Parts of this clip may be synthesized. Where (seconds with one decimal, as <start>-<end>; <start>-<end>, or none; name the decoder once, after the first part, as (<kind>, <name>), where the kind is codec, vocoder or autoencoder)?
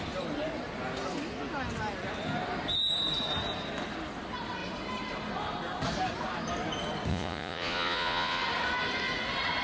7.1-8.4 (vocoder, Vocos)